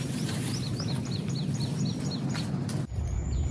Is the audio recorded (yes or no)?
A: yes